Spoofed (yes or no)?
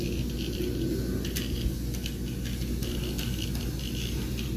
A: no